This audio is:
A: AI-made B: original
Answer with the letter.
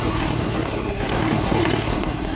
A